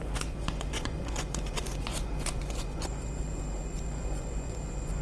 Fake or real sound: fake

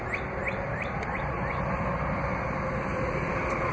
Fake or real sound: real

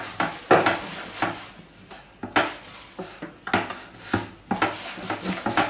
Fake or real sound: real